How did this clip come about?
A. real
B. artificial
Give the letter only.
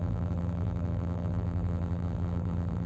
B